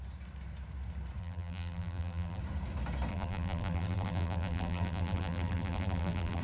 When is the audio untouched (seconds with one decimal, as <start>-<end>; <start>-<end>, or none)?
0.0-1.2; 2.4-3.1